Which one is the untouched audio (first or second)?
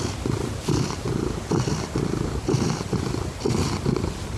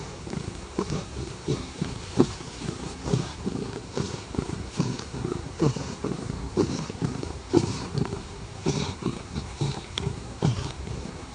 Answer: first